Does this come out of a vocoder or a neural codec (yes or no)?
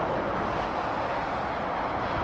no